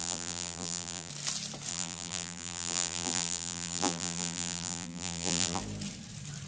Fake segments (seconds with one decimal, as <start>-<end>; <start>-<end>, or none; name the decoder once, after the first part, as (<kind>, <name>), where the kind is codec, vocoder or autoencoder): 0.0-1.1 (vocoder, BigVGAN v2); 1.7-5.6